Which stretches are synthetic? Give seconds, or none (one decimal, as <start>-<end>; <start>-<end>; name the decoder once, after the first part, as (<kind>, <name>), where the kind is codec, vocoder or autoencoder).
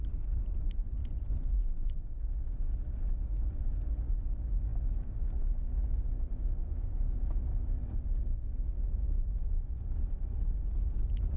1.0-2.1 (vocoder, Vocos); 6.6-7.2